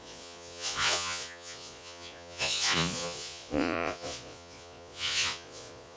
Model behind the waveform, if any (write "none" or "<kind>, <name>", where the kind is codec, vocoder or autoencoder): vocoder, Vocos